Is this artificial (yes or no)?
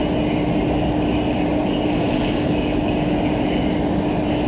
no